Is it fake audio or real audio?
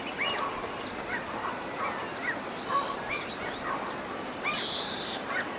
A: fake